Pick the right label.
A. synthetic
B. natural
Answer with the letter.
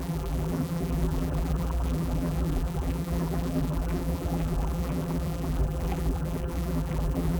A